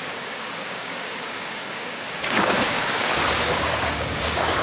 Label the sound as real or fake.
fake